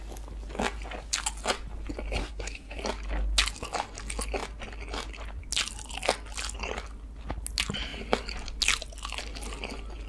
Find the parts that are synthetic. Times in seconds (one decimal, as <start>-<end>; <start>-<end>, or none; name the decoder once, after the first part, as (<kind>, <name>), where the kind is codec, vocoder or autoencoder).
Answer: 2.2-2.8 (codec, SNAC)